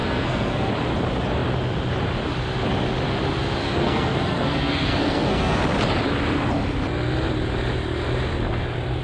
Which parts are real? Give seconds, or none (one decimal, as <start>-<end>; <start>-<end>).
0.7-3.6; 5.6-9.0